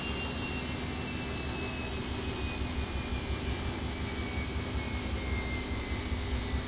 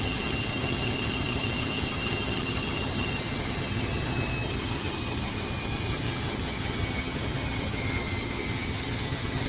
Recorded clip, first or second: first